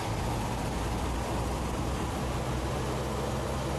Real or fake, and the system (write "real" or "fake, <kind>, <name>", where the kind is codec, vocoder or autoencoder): real